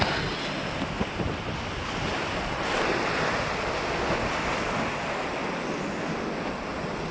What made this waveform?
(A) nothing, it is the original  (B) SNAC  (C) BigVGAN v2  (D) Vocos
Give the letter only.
A